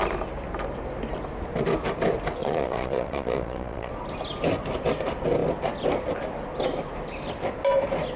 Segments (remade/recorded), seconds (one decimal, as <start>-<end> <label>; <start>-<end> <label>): 0.0-2.4 recorded; 2.4-3.9 remade; 3.9-8.2 recorded